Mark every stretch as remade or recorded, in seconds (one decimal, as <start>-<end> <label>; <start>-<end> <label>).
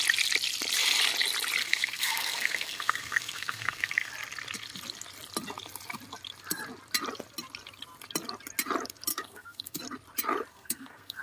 0.0-1.6 recorded; 1.6-4.1 remade; 4.1-9.1 recorded; 9.1-9.8 remade; 9.8-10.5 recorded; 10.5-11.2 remade